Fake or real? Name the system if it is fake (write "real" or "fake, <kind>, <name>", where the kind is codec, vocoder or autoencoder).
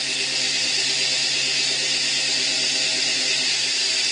real